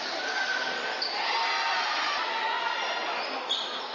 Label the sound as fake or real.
real